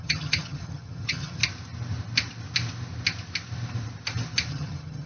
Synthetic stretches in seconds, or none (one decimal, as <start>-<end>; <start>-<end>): 0.0-1.4; 4.5-5.1

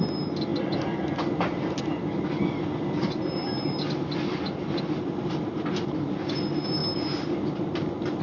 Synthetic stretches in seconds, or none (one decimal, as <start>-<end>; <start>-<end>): none

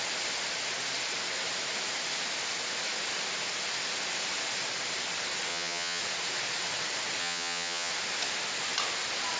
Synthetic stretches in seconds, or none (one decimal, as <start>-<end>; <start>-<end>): 5.5-6.0; 7.2-7.9

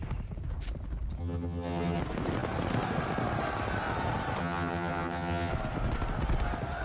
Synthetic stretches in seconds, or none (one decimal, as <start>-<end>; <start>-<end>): 1.2-2.0; 4.4-5.5

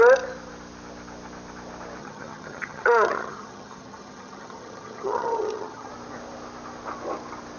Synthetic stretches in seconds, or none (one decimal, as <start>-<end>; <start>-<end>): 2.0-5.9

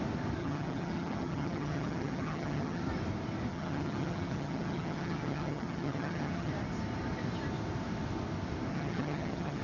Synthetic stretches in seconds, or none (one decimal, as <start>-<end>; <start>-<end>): 0.4-2.8; 3.5-6.5; 8.7-9.6